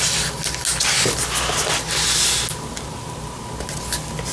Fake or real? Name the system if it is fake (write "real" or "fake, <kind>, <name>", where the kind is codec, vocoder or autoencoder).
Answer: real